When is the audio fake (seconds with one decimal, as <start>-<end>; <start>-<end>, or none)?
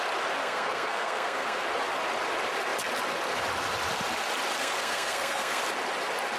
0.4-1.6; 4.6-5.6